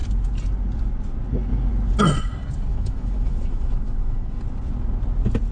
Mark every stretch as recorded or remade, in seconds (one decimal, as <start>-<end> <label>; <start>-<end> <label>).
0.0-2.7 recorded; 2.7-4.4 remade; 4.4-5.5 recorded